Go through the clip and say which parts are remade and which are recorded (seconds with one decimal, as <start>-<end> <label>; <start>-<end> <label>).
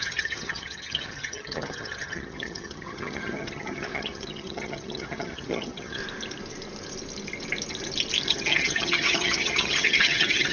0.0-6.0 remade; 6.0-8.3 recorded; 8.3-10.5 remade